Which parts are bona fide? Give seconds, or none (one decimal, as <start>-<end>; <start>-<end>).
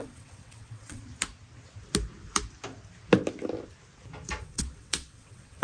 1.0-4.4